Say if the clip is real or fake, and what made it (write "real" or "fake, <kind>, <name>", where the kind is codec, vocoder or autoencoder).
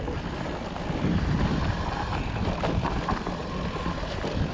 real